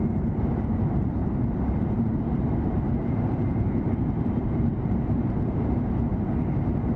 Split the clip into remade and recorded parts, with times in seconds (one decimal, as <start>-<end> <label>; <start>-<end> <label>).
0.0-6.1 remade; 6.1-7.0 recorded